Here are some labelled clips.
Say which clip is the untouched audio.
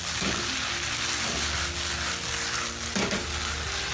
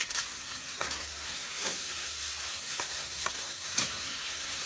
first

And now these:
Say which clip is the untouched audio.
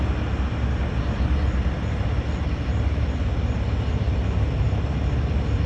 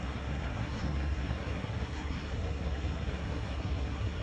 first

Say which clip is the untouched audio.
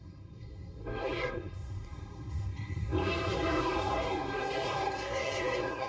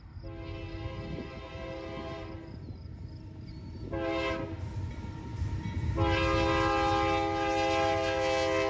second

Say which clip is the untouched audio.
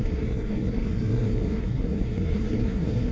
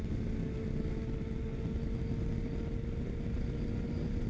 second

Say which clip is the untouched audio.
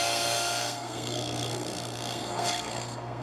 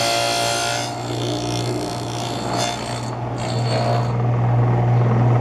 second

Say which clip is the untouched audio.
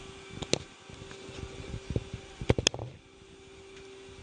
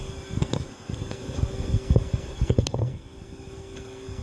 first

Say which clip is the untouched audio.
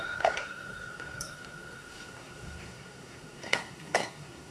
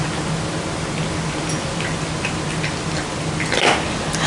second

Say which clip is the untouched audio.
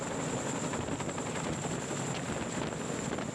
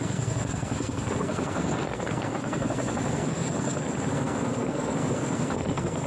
first